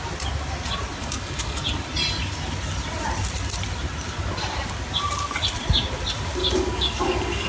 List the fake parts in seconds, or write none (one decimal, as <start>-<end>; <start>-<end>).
1.0-1.6; 6.4-7.5